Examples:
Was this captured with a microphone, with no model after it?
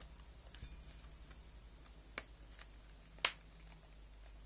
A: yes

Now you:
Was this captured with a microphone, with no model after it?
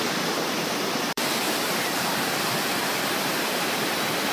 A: no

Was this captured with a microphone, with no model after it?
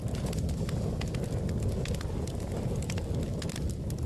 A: yes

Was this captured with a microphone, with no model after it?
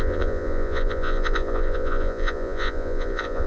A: no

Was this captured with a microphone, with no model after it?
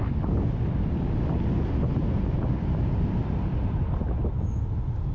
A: yes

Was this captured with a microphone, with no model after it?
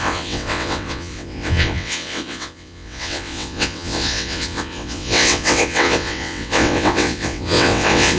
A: no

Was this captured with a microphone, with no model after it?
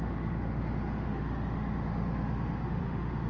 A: no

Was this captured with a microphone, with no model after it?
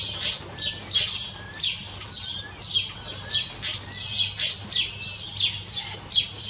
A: yes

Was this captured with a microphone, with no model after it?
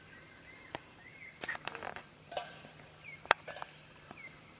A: no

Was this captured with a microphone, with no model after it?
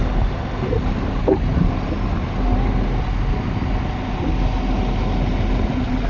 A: yes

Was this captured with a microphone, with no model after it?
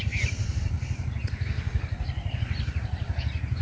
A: yes